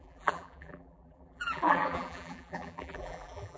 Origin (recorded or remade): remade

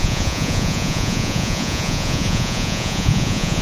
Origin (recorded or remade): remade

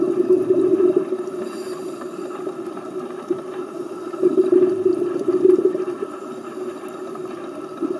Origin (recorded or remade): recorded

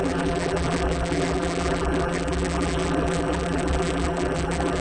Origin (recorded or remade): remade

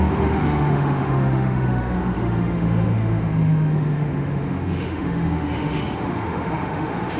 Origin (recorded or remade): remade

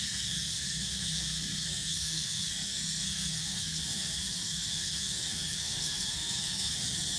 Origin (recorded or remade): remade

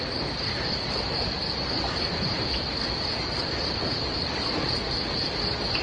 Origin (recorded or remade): recorded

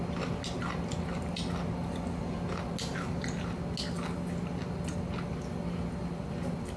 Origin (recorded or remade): recorded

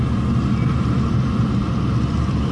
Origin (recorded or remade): recorded